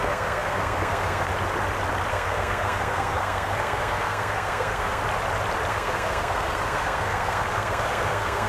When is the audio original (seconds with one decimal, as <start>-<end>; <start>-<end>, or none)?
1.3-2.1; 5.0-5.7